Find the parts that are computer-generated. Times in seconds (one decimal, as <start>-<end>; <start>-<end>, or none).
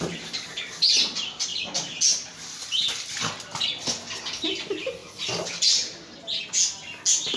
none